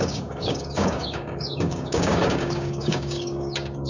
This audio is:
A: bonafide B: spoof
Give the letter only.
B